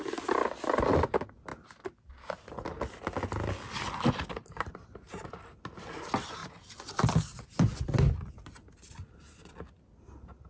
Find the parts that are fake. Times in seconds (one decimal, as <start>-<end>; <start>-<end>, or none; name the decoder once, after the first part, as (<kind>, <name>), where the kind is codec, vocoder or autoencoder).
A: none